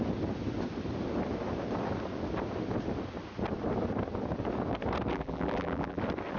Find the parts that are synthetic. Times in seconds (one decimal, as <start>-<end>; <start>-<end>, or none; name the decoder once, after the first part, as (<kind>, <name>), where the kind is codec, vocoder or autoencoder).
5.1-6.0 (vocoder, BigVGAN v2)